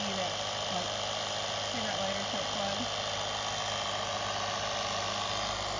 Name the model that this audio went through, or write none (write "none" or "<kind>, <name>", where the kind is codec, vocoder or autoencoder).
none